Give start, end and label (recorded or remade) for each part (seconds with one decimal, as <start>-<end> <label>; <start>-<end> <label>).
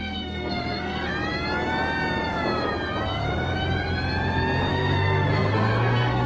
0.0-1.1 remade; 1.1-4.7 recorded; 4.7-6.3 remade